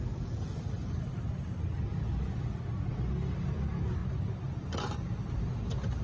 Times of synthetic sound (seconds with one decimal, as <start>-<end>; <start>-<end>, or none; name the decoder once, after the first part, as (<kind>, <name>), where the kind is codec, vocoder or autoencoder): none